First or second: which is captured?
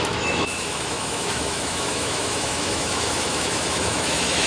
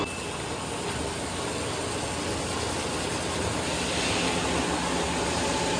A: second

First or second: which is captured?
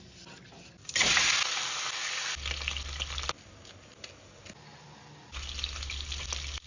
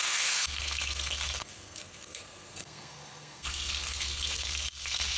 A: first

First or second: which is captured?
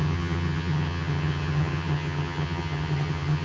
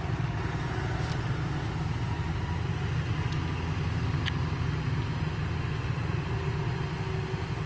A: second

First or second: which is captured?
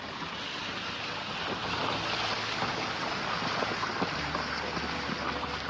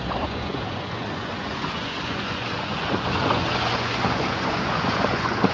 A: first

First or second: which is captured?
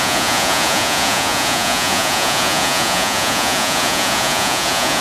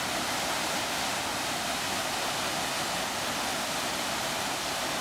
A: second